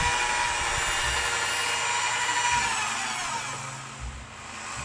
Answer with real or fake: real